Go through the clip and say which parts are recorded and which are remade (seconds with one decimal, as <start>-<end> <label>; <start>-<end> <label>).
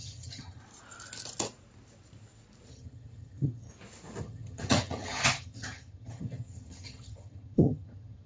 0.0-0.6 remade; 0.6-2.7 recorded; 2.7-3.7 remade; 3.7-4.2 recorded; 4.2-8.3 remade